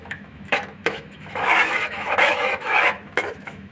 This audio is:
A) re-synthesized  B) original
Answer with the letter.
A